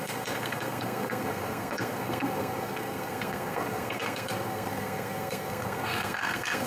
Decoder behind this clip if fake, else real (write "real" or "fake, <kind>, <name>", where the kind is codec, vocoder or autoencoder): fake, codec, SNAC